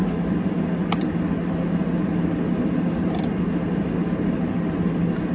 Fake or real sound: real